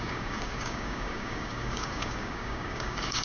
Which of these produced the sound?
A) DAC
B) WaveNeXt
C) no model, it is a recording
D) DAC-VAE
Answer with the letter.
A